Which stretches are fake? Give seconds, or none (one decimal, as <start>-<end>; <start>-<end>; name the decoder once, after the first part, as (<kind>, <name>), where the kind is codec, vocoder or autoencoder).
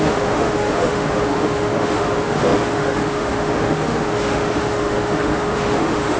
0.0-6.2 (autoencoder, DAC-VAE)